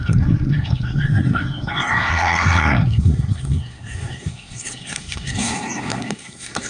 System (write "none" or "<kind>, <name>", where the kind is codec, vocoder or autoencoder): codec, SNAC